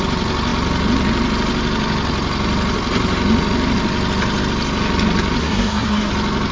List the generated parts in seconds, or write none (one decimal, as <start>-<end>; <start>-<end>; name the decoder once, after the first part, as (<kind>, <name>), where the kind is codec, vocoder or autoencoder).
5.4-6.1 (codec, SNAC)